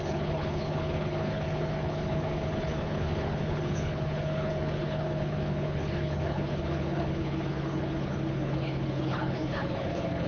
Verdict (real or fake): fake